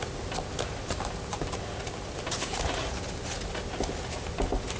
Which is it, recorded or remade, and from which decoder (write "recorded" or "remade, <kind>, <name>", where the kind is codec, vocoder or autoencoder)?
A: recorded